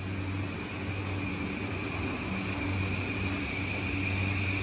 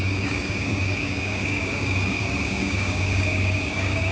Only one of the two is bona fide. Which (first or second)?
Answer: first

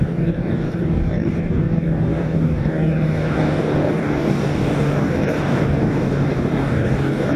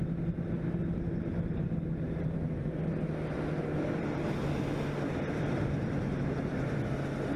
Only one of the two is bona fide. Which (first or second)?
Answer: second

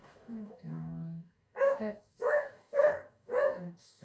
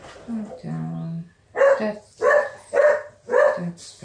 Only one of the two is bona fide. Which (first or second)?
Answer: second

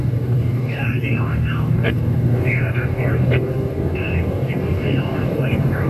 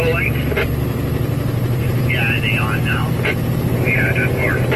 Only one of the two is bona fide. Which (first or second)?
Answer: second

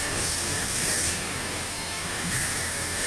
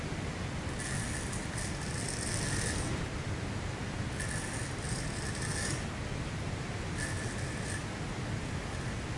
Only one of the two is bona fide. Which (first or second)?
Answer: second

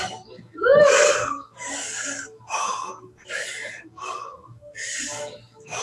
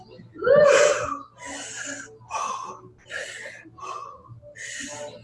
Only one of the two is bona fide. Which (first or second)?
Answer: second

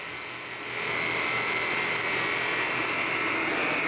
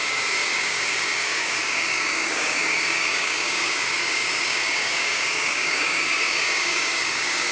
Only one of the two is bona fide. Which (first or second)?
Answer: first